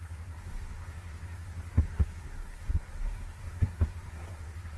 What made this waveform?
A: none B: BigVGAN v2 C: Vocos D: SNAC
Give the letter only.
D